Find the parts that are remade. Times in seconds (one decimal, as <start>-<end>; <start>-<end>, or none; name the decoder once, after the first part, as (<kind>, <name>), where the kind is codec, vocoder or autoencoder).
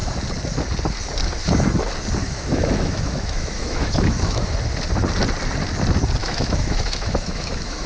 2.2-4.5 (autoencoder, DAC-VAE); 6.2-7.9